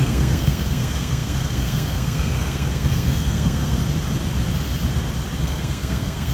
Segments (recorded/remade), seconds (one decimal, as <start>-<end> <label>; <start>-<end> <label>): 0.0-3.8 remade; 3.8-5.4 recorded; 5.4-6.3 remade